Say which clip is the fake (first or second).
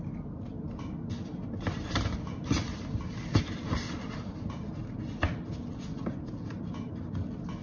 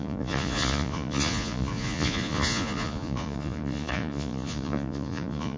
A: second